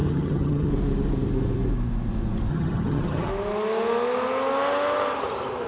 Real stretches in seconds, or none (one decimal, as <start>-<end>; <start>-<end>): 0.7-2.5; 3.3-5.7